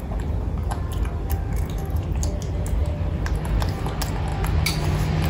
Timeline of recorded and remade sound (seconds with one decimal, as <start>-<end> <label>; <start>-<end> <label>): 0.0-2.8 recorded; 2.8-3.6 remade; 3.6-4.3 recorded; 4.3-5.3 remade